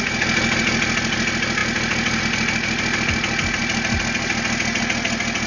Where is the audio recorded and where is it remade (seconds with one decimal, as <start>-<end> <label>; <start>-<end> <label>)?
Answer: 0.0-5.5 recorded